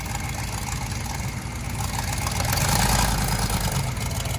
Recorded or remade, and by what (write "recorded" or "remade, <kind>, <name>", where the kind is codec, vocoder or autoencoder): recorded